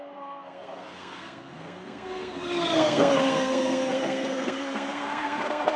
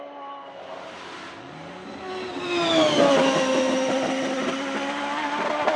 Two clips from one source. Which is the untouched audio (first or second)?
second